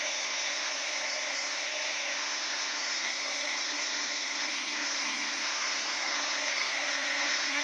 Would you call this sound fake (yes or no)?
yes